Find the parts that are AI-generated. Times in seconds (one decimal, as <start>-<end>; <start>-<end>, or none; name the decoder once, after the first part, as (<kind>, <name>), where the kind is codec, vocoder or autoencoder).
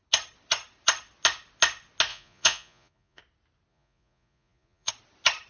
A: 2.1-3.2 (vocoder, Vocos); 3.7-4.9